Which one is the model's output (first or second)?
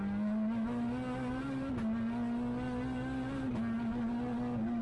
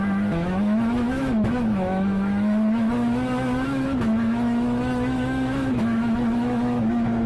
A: second